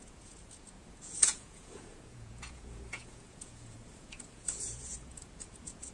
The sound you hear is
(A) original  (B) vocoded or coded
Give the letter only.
B